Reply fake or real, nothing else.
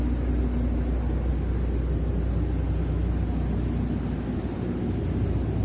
real